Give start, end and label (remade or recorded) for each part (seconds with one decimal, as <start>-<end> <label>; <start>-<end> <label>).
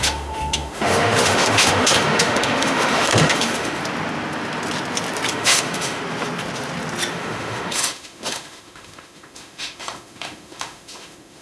0.0-3.8 remade; 3.8-5.3 recorded; 5.3-6.0 remade; 6.0-7.1 recorded; 7.1-11.4 remade